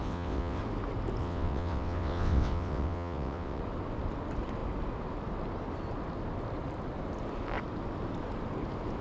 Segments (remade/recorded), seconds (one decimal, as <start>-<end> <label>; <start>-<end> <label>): 0.0-0.6 remade; 0.6-1.2 recorded; 1.2-3.6 remade; 3.6-9.0 recorded